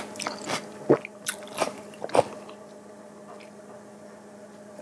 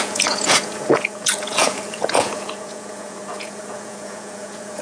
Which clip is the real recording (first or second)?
first